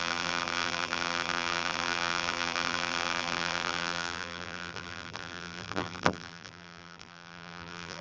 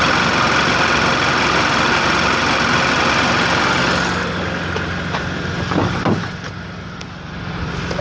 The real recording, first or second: second